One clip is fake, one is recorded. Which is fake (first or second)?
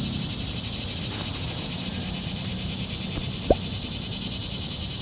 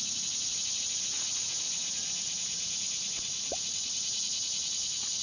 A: second